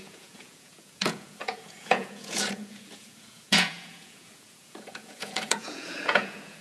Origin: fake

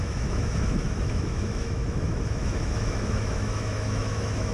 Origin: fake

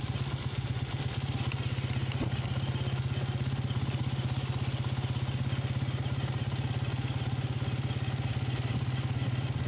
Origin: real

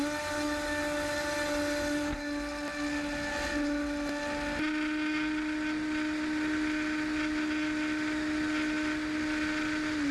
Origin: real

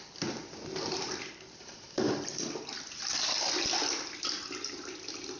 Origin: fake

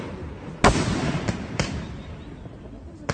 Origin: fake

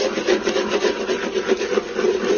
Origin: real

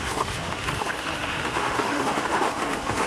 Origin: fake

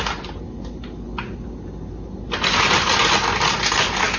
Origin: real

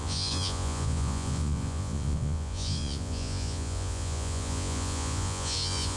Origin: fake